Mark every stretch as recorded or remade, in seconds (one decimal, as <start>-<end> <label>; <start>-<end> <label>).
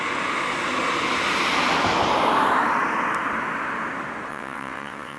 0.0-4.3 recorded; 4.3-5.2 remade